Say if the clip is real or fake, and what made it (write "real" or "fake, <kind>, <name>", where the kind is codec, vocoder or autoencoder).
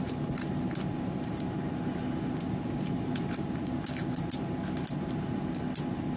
real